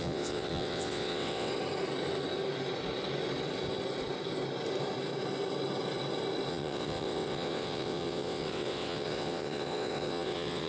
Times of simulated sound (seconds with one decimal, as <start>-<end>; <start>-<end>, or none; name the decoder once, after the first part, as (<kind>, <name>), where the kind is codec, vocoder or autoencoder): 0.0-1.5 (vocoder, WaveNeXt); 6.5-10.7